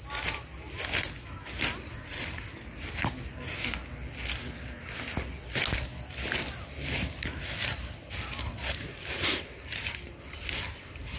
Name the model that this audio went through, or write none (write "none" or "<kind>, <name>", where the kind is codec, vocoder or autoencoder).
none